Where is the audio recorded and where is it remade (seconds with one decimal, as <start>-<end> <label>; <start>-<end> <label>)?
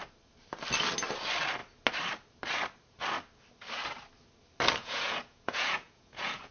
0.0-4.8 recorded; 4.8-6.5 remade